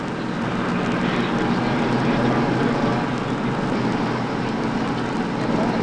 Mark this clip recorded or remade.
recorded